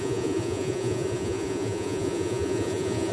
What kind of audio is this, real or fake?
fake